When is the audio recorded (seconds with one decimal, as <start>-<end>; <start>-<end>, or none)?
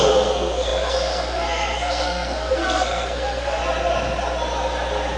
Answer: 3.6-5.2